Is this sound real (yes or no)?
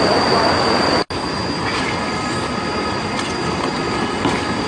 yes